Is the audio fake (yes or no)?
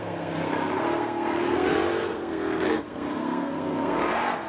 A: yes